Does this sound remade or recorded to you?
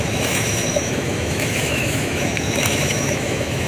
remade